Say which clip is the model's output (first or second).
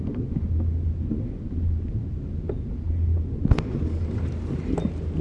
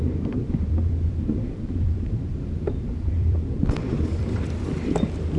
second